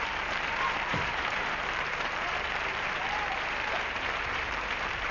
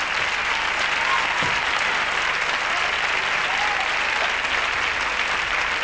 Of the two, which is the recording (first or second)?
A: second